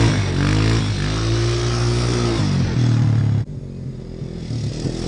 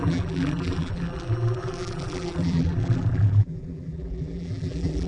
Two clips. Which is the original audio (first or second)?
first